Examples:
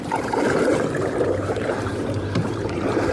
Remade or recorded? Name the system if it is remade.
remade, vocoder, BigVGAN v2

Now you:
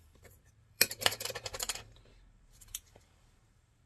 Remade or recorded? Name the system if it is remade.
remade, vocoder, BigVGAN v2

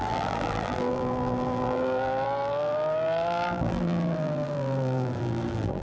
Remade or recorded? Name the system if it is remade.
remade, vocoder, BigVGAN v2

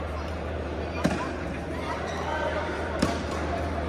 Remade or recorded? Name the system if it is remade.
remade, vocoder, BigVGAN v2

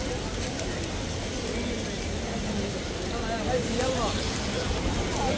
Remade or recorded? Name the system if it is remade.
remade, vocoder, BigVGAN v2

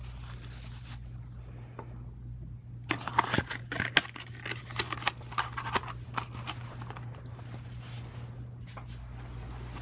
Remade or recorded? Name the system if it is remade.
recorded